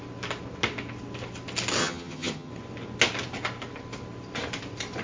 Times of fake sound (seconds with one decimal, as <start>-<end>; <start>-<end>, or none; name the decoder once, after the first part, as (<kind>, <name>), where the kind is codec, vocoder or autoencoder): 1.8-2.5 (vocoder, HiFi-GAN)